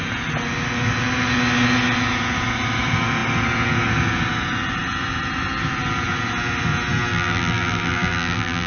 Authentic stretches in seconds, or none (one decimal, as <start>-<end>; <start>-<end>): 0.0-7.1